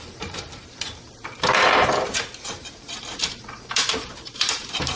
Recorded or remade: remade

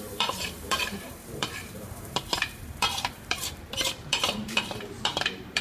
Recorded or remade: remade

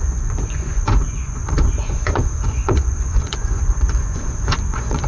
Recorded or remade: remade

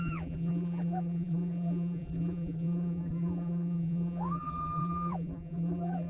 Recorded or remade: remade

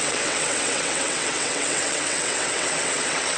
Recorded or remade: remade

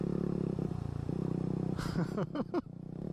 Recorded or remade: remade